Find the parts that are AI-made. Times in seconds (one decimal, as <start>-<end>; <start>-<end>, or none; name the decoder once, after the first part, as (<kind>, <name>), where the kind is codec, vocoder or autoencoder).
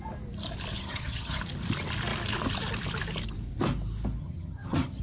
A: 0.7-1.4 (vocoder, HiFi-GAN); 4.2-5.0